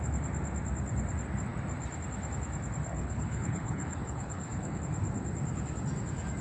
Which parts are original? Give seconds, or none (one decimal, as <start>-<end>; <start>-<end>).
0.0-2.9; 4.8-6.4